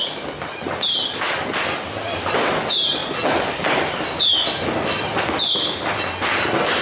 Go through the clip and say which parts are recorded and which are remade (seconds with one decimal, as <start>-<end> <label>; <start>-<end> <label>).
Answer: 0.0-6.8 recorded